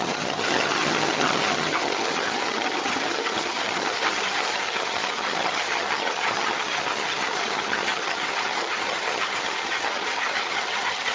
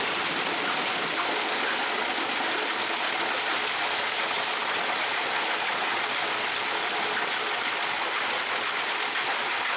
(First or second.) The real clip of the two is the second